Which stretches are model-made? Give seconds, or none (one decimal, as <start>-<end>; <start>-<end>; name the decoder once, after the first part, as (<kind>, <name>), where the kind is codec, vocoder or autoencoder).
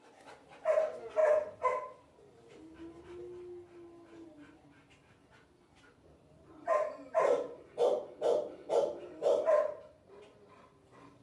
1.2-3.2 (vocoder, BigVGAN v2); 5.3-7.7; 8.6-10.2